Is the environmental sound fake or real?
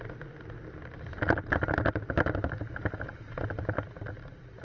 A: real